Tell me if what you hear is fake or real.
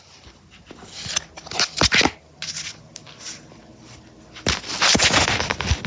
real